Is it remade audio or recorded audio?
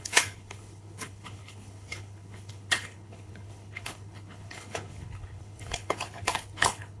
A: remade